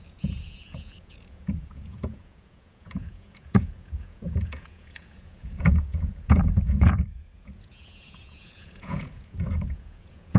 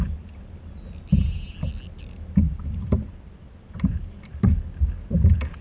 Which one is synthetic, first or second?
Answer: first